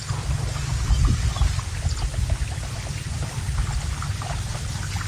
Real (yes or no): yes